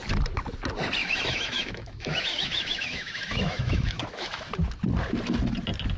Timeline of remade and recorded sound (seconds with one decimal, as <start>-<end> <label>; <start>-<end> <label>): 0.0-1.0 recorded; 1.0-4.5 remade; 4.5-6.0 recorded